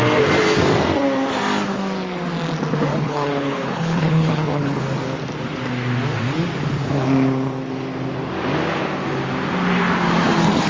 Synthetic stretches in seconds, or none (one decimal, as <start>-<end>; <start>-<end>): 2.9-4.8